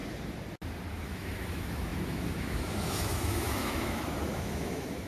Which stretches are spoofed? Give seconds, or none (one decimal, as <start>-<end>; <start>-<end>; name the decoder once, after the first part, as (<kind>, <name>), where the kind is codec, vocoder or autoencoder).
0.9-5.1 (autoencoder, DAC-VAE)